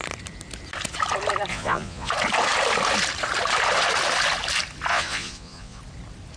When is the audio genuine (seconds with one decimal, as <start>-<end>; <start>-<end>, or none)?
0.0-1.5; 2.1-4.9; 5.8-6.4